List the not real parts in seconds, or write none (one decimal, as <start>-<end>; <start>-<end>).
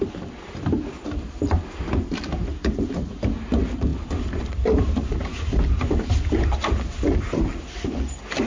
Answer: none